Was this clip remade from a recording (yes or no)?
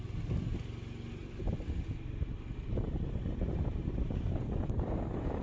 no